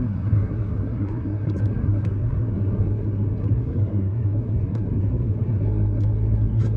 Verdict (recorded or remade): remade